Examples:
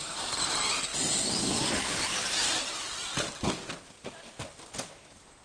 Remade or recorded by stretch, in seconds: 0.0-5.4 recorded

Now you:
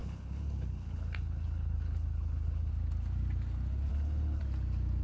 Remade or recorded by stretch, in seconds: 0.0-2.7 remade; 2.7-3.9 recorded; 3.9-4.4 remade; 4.4-5.0 recorded

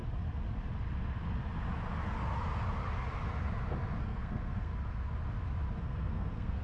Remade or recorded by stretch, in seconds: 0.0-4.0 recorded; 4.0-4.7 remade; 4.7-5.8 recorded; 5.8-6.6 remade